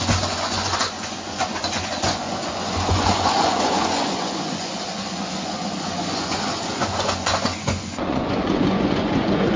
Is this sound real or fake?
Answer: fake